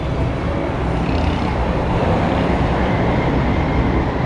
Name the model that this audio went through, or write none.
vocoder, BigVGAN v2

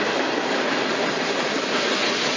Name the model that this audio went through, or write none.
none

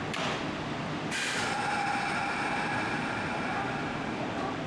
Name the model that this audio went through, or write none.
vocoder, BigVGAN v2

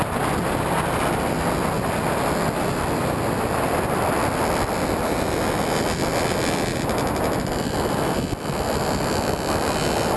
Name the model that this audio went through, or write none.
none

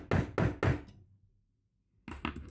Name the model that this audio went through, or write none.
none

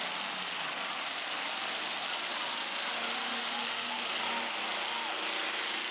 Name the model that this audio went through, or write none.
none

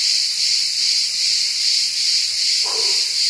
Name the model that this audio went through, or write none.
vocoder, BigVGAN v2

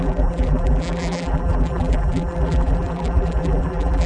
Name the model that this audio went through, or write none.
vocoder, BigVGAN v2